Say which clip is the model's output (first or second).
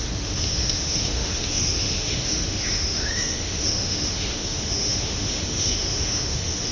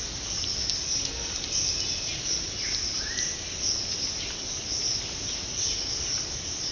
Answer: first